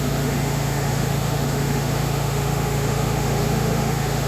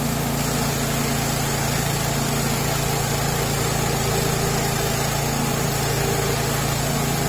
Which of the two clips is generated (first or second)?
first